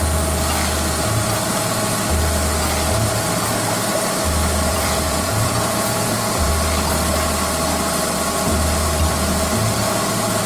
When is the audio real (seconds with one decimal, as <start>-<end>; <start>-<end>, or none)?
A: 0.0-4.7; 6.5-10.5